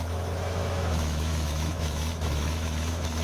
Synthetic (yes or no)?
yes